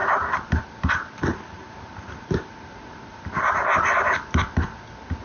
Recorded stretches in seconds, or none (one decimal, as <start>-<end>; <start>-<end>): 0.0-1.3; 3.3-5.2